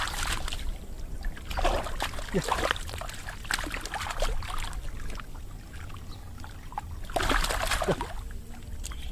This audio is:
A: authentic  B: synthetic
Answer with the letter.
A